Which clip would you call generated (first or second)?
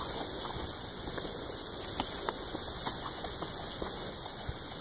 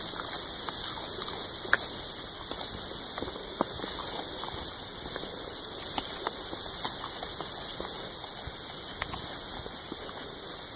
first